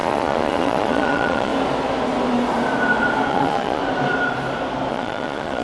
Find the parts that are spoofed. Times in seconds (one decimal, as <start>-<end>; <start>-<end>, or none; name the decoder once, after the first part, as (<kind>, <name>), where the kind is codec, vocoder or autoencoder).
0.0-1.5 (vocoder, Vocos); 3.3-3.8; 4.9-5.6

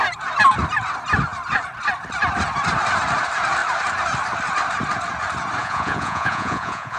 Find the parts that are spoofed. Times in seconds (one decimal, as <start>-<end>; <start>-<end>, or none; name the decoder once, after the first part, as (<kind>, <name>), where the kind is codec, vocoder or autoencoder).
5.6-7.0 (vocoder, Vocos)